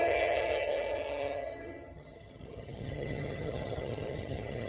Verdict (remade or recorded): remade